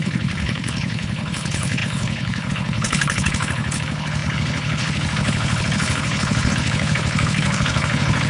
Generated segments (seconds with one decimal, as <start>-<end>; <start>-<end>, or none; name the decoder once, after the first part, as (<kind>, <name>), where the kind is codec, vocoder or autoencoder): 0.0-8.3 (codec, HILCodec)